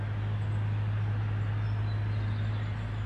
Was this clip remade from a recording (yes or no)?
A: yes